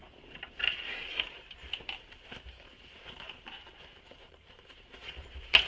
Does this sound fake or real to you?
fake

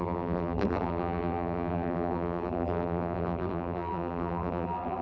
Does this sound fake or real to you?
fake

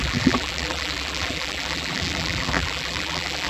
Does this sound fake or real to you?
fake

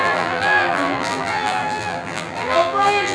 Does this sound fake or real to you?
fake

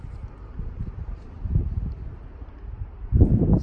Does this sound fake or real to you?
fake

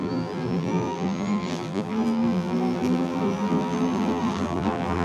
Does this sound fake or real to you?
fake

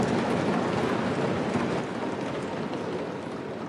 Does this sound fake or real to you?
real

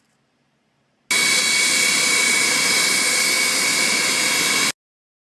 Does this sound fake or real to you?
real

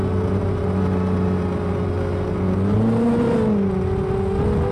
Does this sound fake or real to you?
real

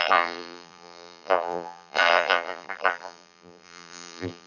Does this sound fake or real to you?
fake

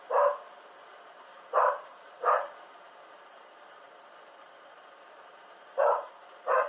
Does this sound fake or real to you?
fake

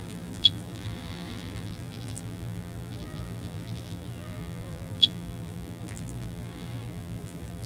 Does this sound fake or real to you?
fake